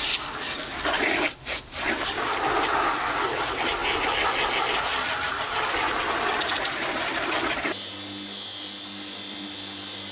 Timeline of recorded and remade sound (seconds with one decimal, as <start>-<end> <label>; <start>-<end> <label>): 0.0-10.1 recorded